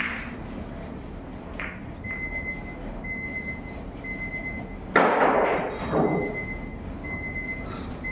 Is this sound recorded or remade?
recorded